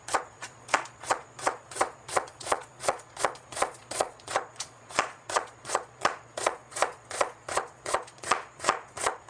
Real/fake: fake